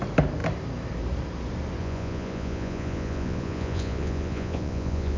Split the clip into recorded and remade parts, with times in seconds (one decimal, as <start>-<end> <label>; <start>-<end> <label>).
0.0-1.8 recorded; 1.8-5.2 remade